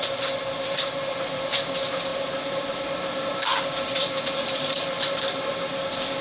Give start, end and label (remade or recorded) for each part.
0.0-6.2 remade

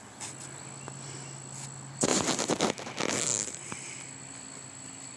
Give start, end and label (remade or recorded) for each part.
0.0-2.1 recorded; 2.1-2.8 remade; 2.8-3.3 recorded; 3.3-5.2 remade

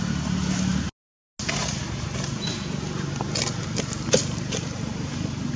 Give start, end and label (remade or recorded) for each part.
0.0-5.6 recorded

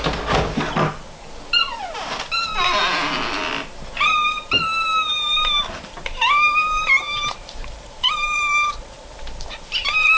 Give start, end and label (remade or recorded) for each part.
0.0-5.1 recorded; 5.1-9.2 remade; 9.2-10.2 recorded

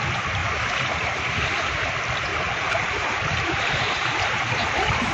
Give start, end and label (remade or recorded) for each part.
0.0-0.4 recorded; 0.4-1.3 remade; 1.3-2.3 recorded; 2.3-5.1 remade

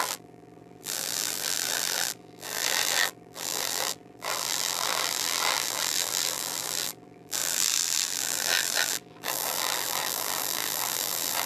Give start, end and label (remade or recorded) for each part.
0.0-11.5 remade

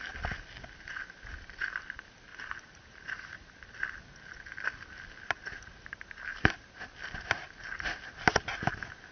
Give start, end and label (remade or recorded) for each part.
0.0-2.3 recorded; 2.3-3.4 remade; 3.4-6.3 recorded; 6.3-6.8 remade; 6.8-9.1 recorded

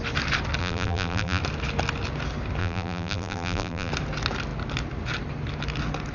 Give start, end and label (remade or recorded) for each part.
0.0-0.6 recorded; 0.6-1.4 remade; 1.4-2.6 recorded; 2.6-3.9 remade; 3.9-6.1 recorded